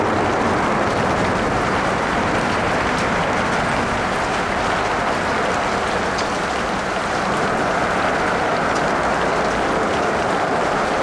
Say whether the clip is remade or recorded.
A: recorded